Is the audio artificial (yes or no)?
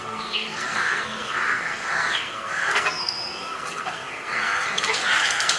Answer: yes